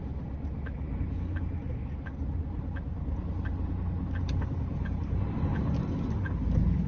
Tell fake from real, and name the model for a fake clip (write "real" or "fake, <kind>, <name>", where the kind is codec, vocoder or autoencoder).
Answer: real